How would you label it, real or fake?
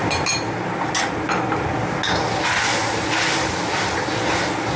real